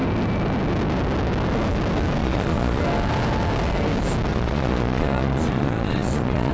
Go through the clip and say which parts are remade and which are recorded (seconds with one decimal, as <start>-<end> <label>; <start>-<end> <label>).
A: 0.0-2.2 recorded; 2.2-2.8 remade; 2.8-4.3 recorded; 4.3-6.5 remade